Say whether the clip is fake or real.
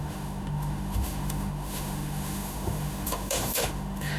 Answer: fake